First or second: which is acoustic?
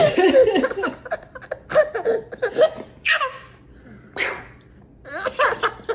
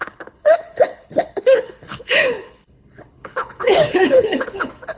first